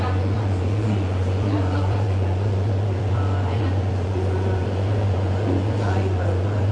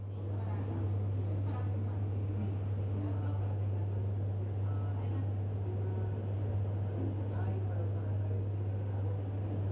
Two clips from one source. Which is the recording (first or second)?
second